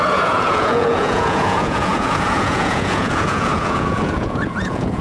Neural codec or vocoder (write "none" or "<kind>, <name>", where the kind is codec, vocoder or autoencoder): vocoder, Vocos